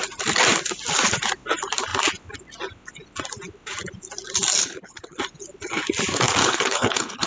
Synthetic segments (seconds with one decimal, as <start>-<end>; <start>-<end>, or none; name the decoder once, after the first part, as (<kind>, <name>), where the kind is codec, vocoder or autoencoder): 4.6-5.2 (codec, HILCodec); 6.4-7.3

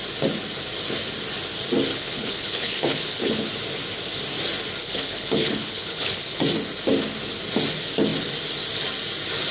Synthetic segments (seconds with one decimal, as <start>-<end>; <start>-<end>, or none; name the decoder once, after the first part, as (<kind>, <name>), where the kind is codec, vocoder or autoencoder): 1.9-3.5 (codec, HILCodec); 4.8-6.4

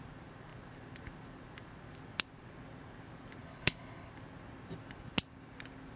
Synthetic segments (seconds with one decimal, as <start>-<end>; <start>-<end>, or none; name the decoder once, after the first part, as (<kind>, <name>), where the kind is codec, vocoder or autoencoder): 3.4-4.1 (codec, HILCodec)

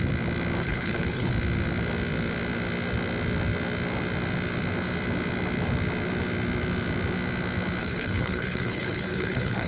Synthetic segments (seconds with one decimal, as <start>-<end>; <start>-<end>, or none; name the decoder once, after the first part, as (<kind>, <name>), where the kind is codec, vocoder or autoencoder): 0.6-1.3 (codec, HILCodec); 7.8-9.7

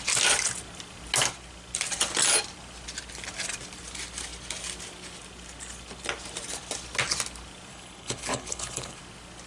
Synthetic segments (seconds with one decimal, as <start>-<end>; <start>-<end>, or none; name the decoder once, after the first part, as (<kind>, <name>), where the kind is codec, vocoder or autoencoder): 7.7-9.0 (codec, HILCodec)

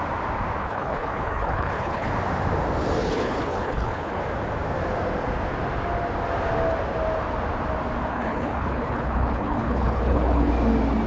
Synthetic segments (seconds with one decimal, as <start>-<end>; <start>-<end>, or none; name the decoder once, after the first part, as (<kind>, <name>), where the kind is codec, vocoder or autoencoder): 0.6-2.1 (codec, HILCodec); 3.0-4.2; 8.1-10.5

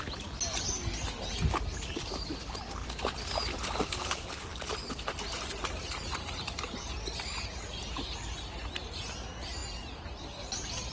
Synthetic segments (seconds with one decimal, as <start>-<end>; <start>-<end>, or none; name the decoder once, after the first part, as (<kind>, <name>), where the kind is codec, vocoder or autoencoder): none

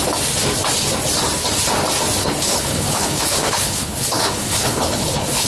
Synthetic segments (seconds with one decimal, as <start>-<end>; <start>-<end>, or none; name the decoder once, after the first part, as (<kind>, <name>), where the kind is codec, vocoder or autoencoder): 2.2-5.5 (codec, HILCodec)